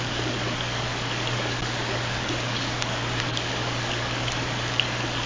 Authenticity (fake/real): fake